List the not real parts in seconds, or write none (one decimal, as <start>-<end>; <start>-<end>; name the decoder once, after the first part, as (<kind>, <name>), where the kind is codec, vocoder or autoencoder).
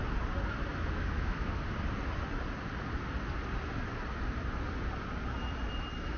0.7-1.6 (autoencoder, DAC-VAE)